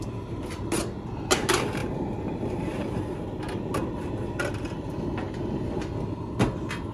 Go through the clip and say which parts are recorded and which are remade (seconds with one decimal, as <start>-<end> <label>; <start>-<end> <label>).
0.0-6.9 recorded